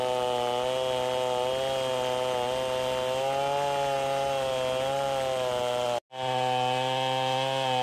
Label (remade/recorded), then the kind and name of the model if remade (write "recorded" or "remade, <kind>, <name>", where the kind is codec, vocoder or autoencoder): recorded